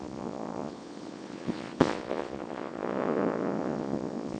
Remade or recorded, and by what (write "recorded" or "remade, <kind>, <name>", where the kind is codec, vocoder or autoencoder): remade, vocoder, Vocos